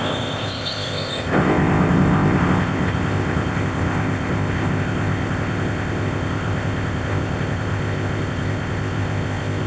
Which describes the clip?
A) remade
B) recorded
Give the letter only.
A